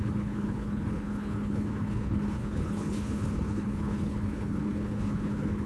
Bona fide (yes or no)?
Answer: no